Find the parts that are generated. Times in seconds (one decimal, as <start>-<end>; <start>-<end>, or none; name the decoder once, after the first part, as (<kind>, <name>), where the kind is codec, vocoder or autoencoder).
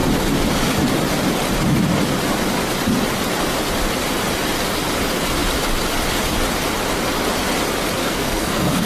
8.0-8.9 (codec, SNAC)